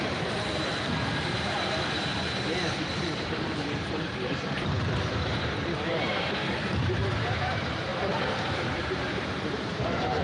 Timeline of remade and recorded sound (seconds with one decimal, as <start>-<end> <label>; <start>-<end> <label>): 0.0-10.2 remade